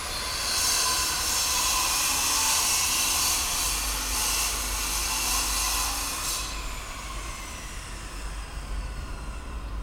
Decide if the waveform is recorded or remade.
recorded